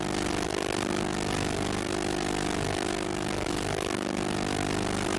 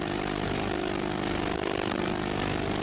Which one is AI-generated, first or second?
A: second